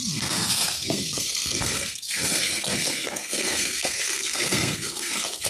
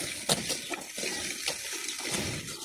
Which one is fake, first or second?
first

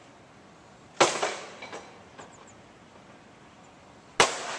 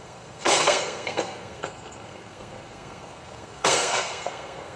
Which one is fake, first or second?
second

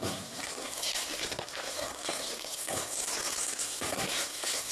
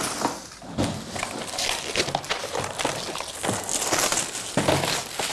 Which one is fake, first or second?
first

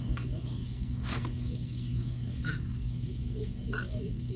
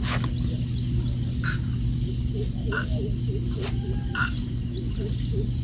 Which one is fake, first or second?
first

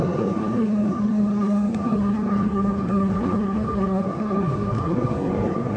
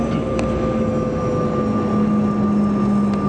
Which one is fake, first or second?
first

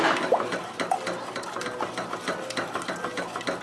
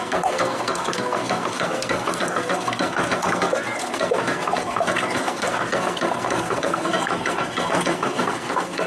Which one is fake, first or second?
second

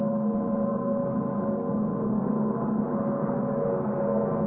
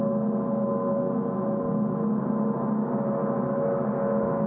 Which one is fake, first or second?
first